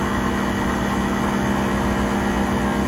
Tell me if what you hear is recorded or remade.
recorded